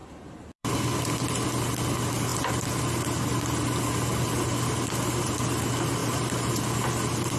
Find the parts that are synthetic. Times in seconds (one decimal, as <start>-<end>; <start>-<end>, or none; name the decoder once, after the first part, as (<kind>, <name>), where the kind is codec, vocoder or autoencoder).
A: 0.0-0.7 (vocoder, BigVGAN v2); 6.0-6.6